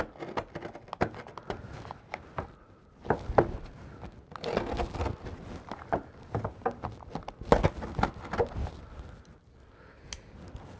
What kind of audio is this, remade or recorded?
recorded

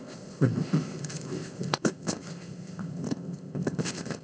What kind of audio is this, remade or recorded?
remade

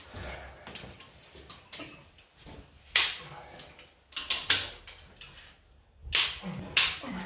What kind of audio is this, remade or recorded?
recorded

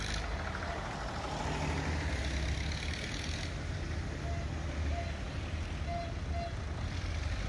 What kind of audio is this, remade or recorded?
recorded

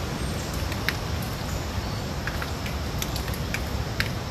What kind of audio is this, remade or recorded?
recorded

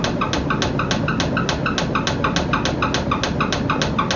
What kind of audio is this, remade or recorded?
recorded